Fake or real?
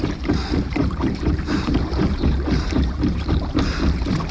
fake